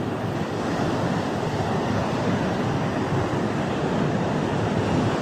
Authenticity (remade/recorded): recorded